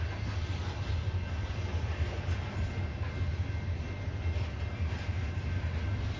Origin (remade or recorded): recorded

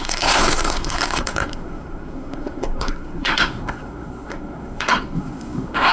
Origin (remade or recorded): remade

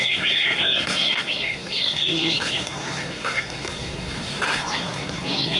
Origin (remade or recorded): remade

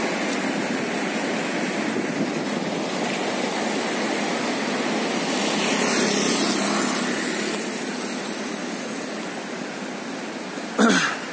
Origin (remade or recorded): recorded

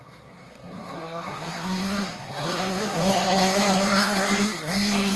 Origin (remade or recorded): remade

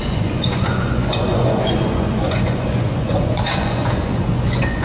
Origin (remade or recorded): remade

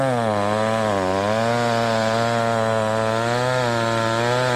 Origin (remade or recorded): recorded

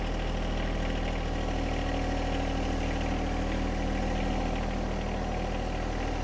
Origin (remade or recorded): recorded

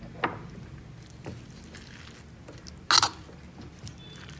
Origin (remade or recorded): recorded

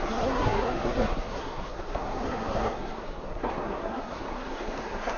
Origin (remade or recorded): remade